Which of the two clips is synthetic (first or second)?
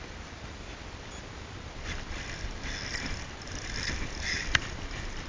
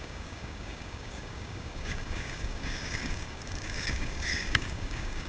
second